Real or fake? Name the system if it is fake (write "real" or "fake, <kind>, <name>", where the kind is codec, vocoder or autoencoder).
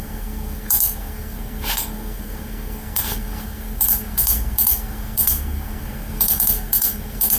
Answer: fake, codec, SNAC